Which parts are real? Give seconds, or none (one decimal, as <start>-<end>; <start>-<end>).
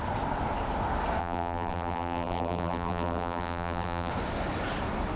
0.0-1.2; 4.1-5.2